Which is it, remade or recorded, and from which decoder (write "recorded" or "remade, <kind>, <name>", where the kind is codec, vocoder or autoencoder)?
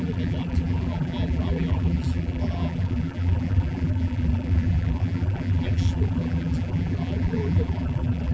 remade, vocoder, BigVGAN v2